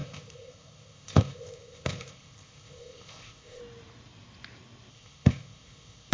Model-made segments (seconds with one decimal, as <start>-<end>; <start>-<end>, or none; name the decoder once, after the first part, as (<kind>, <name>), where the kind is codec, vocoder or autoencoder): 0.0-3.6 (codec, ZipCodec); 4.9-6.1